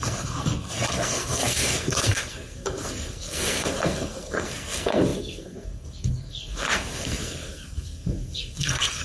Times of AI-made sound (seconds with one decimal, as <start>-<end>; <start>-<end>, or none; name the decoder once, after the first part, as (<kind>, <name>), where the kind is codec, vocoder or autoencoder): 0.0-9.0 (codec, SNAC)

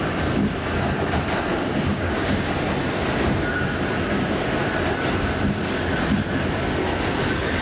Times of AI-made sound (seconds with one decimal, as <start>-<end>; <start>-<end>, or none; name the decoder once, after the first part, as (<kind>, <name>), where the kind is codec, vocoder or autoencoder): 1.9-2.5 (codec, DAC)

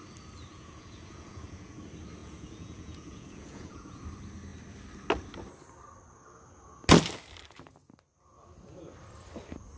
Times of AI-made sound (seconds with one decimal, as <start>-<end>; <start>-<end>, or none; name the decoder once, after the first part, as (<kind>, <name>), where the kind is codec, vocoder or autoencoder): 0.5-1.8 (vocoder, Vocos); 2.2-4.0

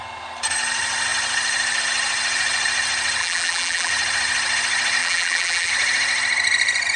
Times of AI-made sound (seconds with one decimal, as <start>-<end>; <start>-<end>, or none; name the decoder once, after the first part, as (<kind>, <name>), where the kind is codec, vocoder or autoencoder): 3.2-3.9 (vocoder, BigVGAN v2); 5.0-5.7

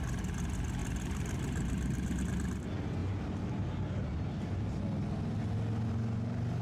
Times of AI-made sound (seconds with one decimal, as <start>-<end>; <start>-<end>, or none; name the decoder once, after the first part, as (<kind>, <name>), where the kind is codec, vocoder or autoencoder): 0.8-2.2 (vocoder, BigVGAN v2); 3.0-4.8

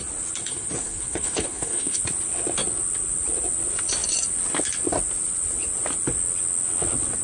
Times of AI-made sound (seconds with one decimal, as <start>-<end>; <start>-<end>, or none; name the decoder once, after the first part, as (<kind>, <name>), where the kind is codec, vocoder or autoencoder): 0.4-2.0 (codec, HILCodec)